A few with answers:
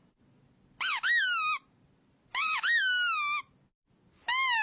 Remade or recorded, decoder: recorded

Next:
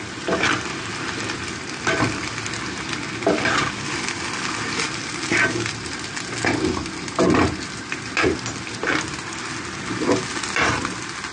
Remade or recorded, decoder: recorded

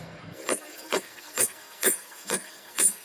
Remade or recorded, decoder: remade, codec, SNAC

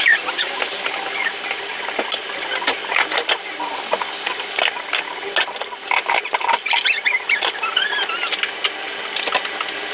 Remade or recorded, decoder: recorded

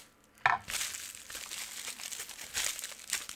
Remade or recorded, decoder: recorded